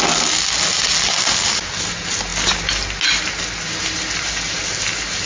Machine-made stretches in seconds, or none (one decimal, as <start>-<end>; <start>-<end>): none

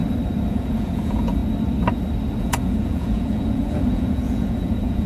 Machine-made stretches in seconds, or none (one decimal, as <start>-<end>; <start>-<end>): 0.5-1.4; 2.4-5.1

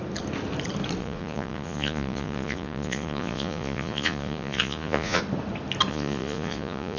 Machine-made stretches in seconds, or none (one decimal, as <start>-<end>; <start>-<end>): 1.0-5.2; 5.9-7.0

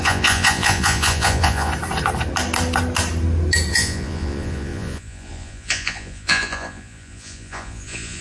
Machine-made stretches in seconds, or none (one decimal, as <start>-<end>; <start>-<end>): 0.0-1.7; 3.7-8.2

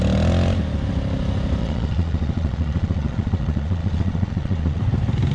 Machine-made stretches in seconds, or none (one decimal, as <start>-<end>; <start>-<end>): 1.6-4.8

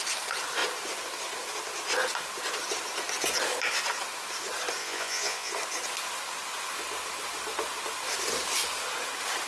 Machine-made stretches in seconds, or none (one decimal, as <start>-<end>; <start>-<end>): 4.8-5.5